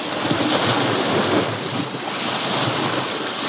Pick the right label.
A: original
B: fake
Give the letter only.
A